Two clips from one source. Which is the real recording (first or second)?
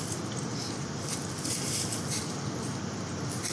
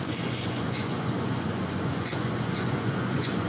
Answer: first